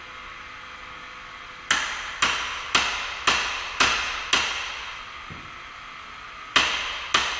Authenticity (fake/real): real